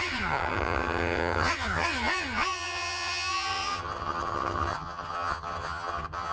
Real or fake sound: fake